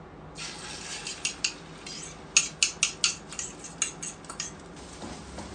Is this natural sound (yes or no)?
yes